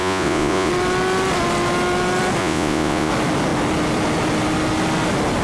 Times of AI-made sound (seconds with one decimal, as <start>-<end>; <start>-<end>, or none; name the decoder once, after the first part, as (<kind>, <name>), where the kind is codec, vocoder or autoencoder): 0.0-0.7 (vocoder, Vocos); 2.4-3.1